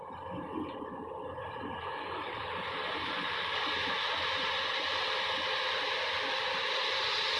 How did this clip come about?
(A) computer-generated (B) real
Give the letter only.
B